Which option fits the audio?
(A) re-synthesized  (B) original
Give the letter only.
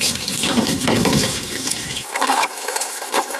A